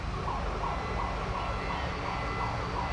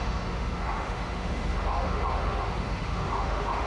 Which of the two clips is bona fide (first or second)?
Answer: first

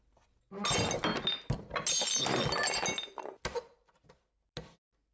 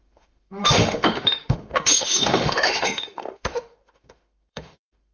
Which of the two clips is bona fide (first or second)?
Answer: first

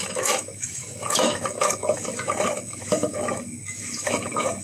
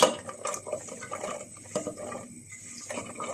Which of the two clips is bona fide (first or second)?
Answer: second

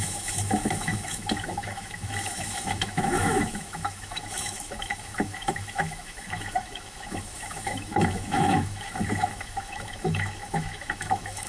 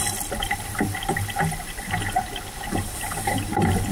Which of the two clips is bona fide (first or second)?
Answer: second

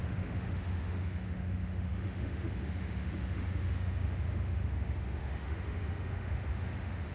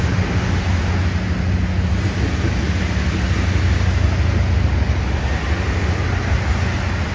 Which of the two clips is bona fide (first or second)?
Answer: second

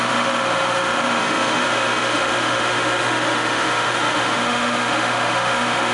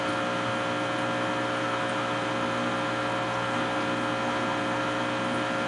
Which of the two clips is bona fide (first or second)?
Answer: second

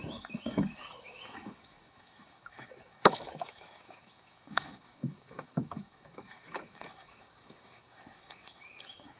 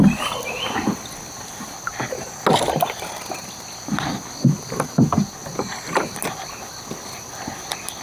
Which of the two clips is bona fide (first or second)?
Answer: second